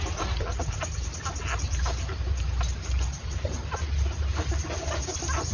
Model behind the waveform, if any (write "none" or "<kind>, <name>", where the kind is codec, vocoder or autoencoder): none